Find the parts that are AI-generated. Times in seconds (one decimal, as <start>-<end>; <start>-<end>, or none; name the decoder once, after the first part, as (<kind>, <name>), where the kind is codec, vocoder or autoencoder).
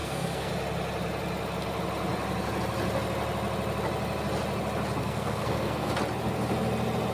0.0-0.5 (codec, SNAC); 5.0-5.9